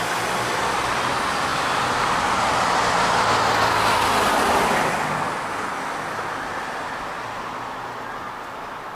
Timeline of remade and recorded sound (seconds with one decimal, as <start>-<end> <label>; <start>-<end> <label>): 0.0-1.5 recorded; 1.5-2.7 remade; 2.7-8.9 recorded